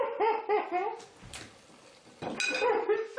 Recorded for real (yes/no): yes